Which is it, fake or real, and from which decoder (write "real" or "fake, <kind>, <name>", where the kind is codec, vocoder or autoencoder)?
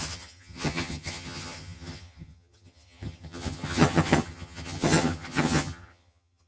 fake, vocoder, HiFi-GAN